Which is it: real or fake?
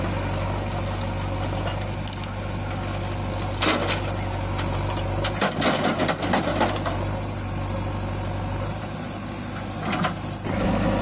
real